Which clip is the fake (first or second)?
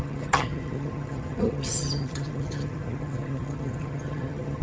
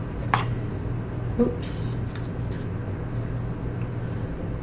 first